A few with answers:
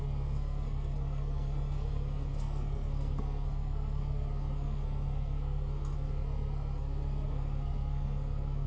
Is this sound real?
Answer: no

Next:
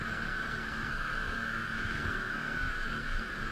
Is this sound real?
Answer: no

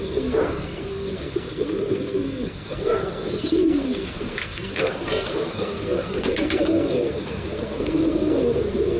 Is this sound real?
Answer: no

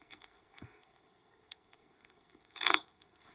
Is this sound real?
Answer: no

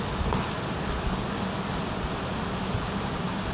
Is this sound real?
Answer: yes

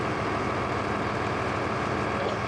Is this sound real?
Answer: yes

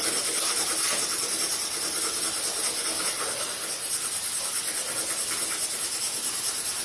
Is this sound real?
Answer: yes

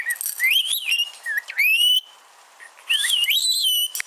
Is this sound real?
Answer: yes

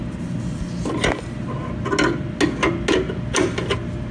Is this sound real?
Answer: yes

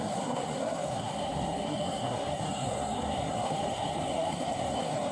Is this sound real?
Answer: no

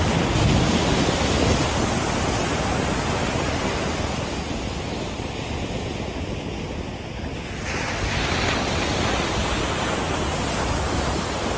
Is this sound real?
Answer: yes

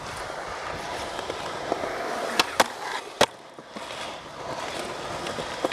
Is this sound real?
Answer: yes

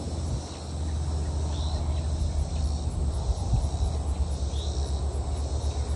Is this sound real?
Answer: yes